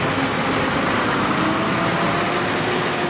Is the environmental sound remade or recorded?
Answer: recorded